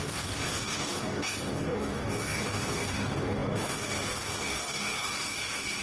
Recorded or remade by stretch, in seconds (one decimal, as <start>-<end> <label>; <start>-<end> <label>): 0.0-5.8 remade